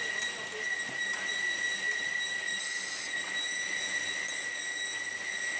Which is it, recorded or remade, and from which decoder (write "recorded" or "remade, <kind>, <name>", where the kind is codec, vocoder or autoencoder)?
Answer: recorded